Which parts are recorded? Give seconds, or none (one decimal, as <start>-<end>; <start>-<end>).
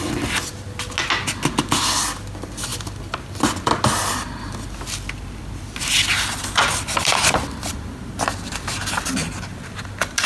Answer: 0.0-10.3